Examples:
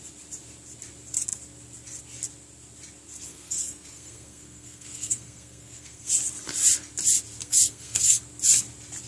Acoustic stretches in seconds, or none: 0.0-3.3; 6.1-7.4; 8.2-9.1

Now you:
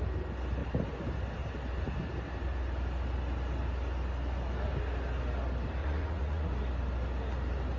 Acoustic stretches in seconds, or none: 0.0-5.8; 6.5-7.8

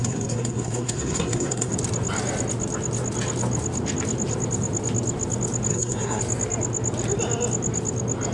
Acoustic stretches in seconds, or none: 1.7-5.7; 6.2-8.3

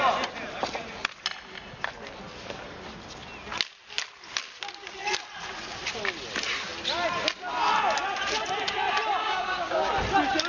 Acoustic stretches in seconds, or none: 0.0-9.2; 9.9-10.5

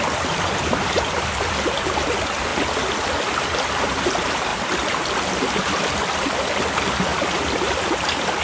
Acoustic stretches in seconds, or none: 0.0-7.1; 7.7-8.4

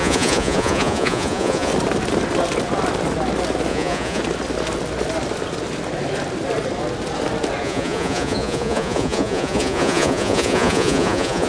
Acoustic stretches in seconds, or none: 1.7-3.7; 4.2-7.6

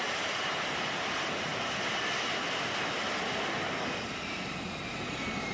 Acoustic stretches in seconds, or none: 1.5-4.8